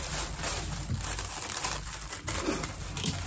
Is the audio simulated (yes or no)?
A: yes